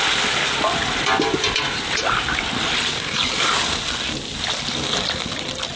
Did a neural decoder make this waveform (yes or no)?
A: no